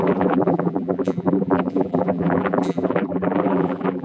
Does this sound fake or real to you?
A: fake